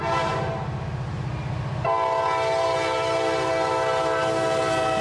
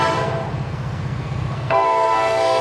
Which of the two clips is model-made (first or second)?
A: second